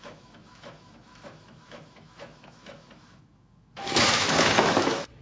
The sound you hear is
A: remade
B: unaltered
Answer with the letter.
A